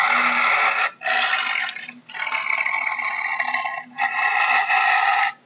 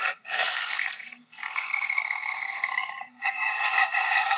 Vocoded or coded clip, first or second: second